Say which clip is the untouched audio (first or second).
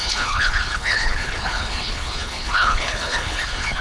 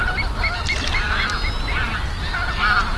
second